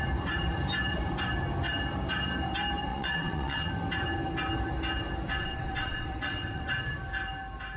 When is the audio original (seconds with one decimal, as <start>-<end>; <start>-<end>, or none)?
0.0-2.9; 3.7-5.4; 6.7-7.8